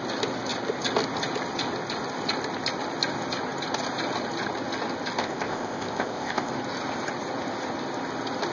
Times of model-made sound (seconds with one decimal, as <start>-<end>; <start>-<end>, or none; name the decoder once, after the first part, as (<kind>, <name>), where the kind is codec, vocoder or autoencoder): 5.2-6.5 (codec, ZipCodec)